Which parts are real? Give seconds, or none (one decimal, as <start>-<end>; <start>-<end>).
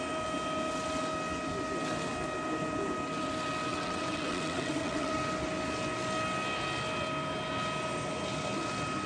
0.0-3.7; 5.1-9.1